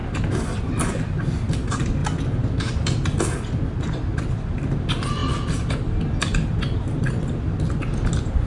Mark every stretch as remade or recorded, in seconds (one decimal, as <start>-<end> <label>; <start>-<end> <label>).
0.0-8.5 recorded